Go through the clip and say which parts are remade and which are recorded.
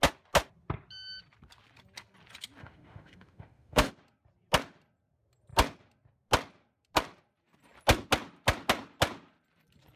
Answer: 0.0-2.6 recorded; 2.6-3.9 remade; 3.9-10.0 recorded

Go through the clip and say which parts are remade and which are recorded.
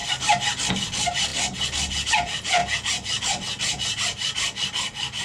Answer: 0.0-0.7 recorded; 0.7-1.3 remade; 1.3-1.9 recorded; 1.9-2.6 remade; 2.6-5.2 recorded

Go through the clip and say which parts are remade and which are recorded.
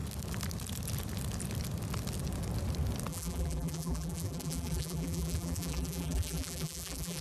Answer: 0.0-3.1 recorded; 3.1-7.2 remade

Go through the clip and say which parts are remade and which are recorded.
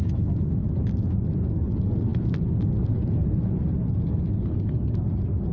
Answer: 0.0-0.6 recorded; 0.6-1.1 remade; 1.1-5.5 recorded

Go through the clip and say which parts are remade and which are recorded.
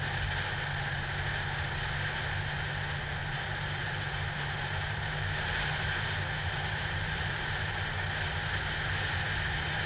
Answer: 0.0-3.2 recorded; 3.2-5.6 remade; 5.6-6.4 recorded; 6.4-7.9 remade; 7.9-9.9 recorded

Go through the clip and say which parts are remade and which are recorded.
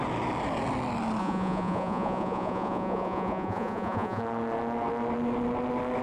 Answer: 0.0-1.2 recorded; 1.2-4.2 remade; 4.2-6.0 recorded